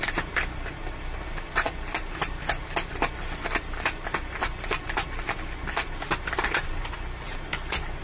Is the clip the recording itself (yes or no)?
yes